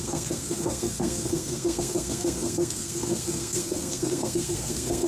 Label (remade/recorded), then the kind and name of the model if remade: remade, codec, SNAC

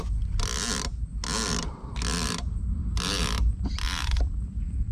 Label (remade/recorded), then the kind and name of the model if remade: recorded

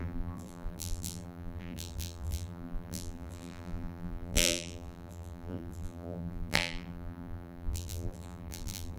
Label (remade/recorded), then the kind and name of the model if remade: remade, vocoder, BigVGAN v2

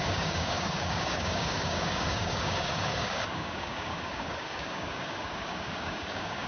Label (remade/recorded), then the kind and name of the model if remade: remade, codec, DAC